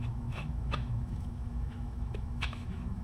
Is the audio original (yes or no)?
no